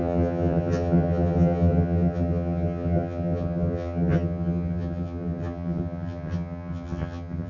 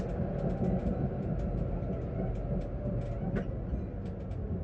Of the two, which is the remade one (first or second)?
first